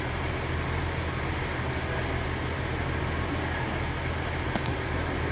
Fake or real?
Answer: real